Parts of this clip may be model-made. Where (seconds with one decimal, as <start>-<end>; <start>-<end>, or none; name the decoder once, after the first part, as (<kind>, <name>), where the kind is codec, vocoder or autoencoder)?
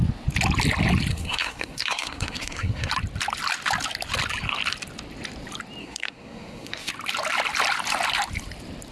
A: 1.1-2.9 (codec, SNAC); 5.8-6.9